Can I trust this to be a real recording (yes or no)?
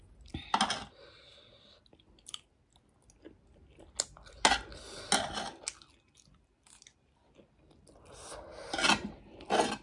yes